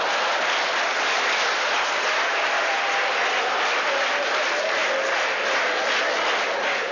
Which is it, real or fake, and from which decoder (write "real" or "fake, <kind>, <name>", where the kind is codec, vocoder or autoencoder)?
real